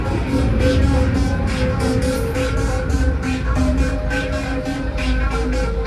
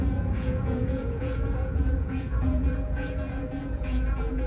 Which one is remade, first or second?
second